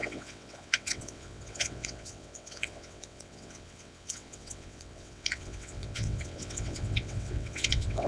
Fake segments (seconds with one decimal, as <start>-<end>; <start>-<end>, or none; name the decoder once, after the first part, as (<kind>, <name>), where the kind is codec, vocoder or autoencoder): 0.0-8.1 (vocoder, WaveNeXt)